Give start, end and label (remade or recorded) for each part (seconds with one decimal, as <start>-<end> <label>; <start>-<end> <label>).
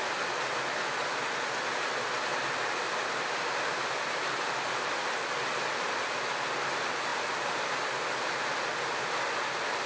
0.0-9.9 recorded